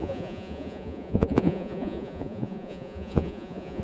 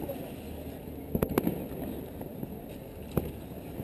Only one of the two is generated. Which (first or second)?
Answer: first